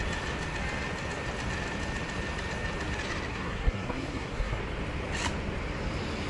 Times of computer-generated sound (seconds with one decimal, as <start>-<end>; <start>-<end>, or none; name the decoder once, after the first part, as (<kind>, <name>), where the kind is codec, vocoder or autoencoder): 3.3-4.6 (codec, SNAC)